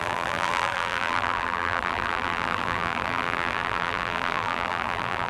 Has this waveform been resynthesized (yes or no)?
yes